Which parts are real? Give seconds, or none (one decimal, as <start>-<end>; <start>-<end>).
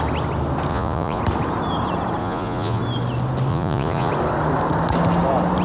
0.0-0.7; 1.2-2.2; 2.8-3.5; 4.1-5.6